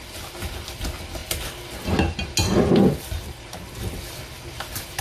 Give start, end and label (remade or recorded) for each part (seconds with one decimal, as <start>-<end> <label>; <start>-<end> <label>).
0.0-1.2 remade; 1.2-2.7 recorded; 2.7-5.0 remade